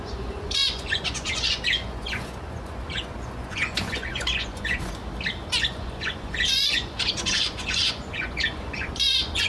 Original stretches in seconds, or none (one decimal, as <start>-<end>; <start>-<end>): 5.0-5.5